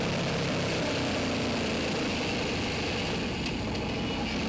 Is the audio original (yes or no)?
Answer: yes